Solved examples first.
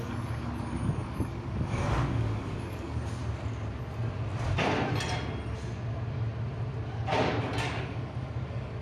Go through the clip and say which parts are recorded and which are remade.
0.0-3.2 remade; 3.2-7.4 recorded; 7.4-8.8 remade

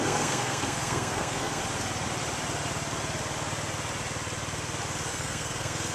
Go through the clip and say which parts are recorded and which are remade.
0.0-1.6 remade; 1.6-5.1 recorded; 5.1-5.9 remade

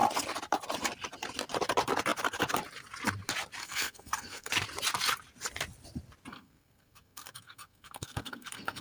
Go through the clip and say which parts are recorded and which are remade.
0.0-3.6 recorded; 3.6-4.5 remade; 4.5-6.3 recorded; 6.3-8.8 remade

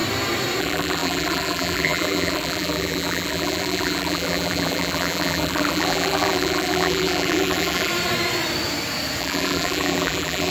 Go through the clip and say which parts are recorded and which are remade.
0.0-0.6 recorded; 0.6-7.9 remade; 7.9-9.2 recorded; 9.2-10.5 remade